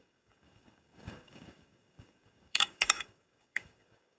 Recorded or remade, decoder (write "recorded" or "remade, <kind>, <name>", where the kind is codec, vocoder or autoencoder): remade, codec, DAC